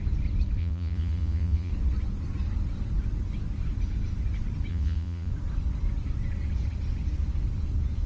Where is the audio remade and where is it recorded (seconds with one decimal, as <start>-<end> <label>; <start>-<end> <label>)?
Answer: 0.0-0.6 recorded; 0.6-1.7 remade; 1.7-4.7 recorded; 4.7-5.3 remade; 5.3-8.1 recorded